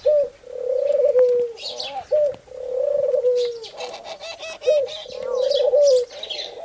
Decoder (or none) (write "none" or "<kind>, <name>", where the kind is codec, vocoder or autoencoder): none